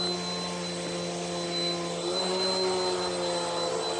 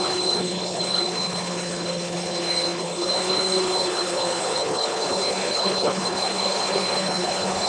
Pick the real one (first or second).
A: first